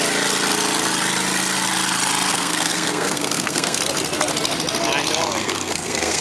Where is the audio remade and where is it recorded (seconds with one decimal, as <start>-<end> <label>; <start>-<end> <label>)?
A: 0.0-2.3 recorded; 2.3-3.8 remade; 3.8-5.4 recorded; 5.4-6.2 remade